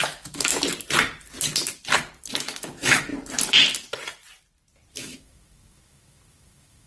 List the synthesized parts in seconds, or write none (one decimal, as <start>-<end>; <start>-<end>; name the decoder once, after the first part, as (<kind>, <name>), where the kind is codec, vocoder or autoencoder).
0.0-0.5 (autoencoder, DAC-VAE); 2.3-3.1; 4.9-6.9